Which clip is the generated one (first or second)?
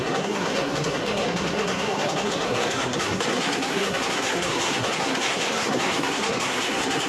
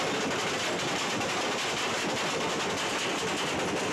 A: first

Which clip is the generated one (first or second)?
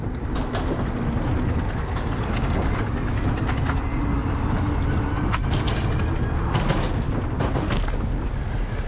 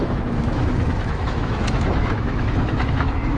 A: second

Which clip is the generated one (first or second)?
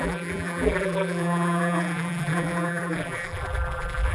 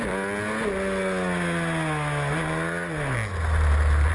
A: first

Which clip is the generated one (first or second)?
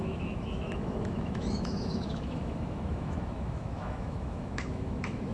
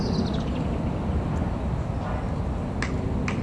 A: first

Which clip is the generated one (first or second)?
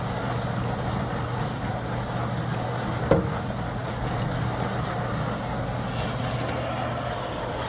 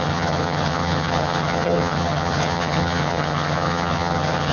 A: second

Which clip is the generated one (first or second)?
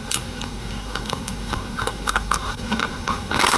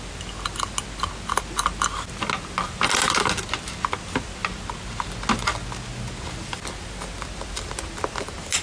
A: first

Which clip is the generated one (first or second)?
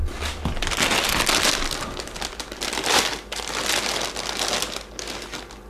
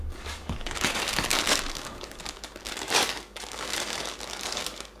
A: second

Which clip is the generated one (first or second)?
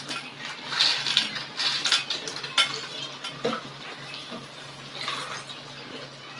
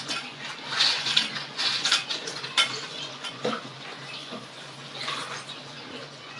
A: second